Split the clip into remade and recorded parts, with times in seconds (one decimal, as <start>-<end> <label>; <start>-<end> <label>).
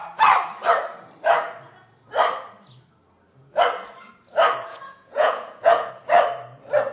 0.0-4.7 recorded; 4.7-5.9 remade; 5.9-6.9 recorded